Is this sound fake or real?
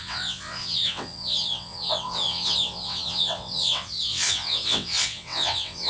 fake